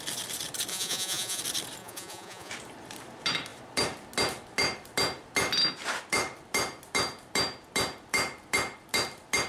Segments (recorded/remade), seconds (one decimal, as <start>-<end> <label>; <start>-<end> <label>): 0.0-0.7 recorded; 0.7-1.4 remade; 1.4-1.8 recorded; 1.8-2.5 remade; 2.5-9.5 recorded